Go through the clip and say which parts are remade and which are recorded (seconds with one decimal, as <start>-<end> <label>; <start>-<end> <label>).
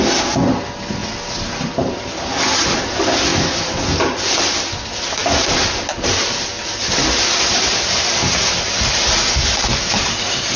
0.0-10.6 recorded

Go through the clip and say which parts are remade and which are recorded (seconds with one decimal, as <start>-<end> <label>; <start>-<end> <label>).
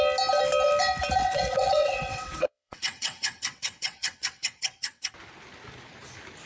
0.0-1.2 recorded; 1.2-5.1 remade; 5.1-6.5 recorded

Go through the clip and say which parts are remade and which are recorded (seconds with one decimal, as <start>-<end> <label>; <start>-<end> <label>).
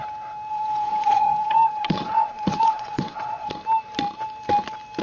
0.0-0.5 recorded; 0.5-3.5 remade; 3.5-5.0 recorded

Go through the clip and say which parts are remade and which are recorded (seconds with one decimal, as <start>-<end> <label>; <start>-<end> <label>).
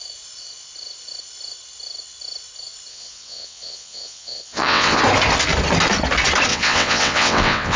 0.0-2.9 recorded; 2.9-5.0 remade; 5.0-6.5 recorded; 6.5-7.8 remade